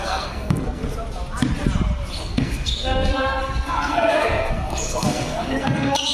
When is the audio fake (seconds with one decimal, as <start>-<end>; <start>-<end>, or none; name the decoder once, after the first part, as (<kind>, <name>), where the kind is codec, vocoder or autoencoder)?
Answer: 0.0-0.8 (codec, SNAC); 2.2-6.1